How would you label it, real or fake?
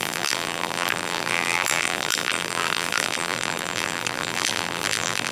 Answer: fake